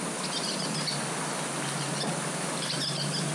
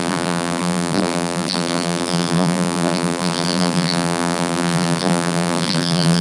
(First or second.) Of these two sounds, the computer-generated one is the second